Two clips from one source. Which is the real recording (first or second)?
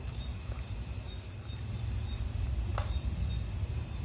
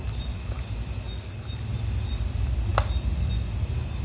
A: second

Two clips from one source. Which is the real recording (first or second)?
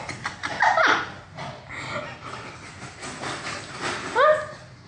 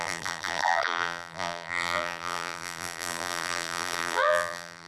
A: first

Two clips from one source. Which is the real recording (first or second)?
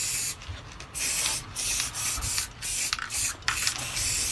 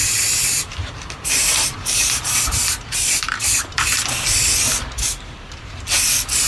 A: first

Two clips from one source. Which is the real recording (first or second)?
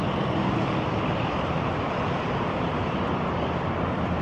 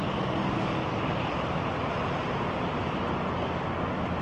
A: second